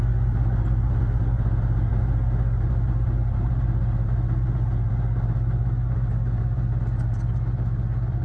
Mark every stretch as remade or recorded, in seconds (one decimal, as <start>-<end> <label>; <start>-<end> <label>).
0.0-8.2 recorded